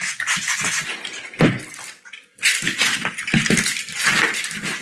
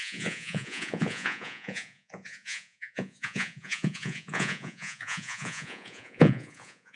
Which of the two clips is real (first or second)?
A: first